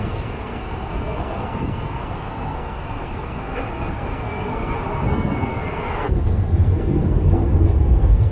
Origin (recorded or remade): remade